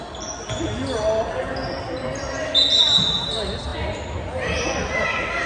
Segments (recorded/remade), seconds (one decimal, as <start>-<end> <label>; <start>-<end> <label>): 0.0-5.5 recorded